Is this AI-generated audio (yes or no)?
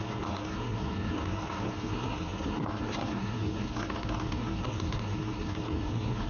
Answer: yes